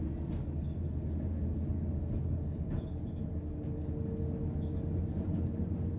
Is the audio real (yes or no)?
yes